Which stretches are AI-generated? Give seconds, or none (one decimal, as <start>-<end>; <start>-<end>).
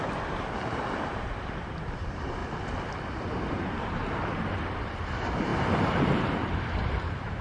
0.0-2.4; 3.5-7.4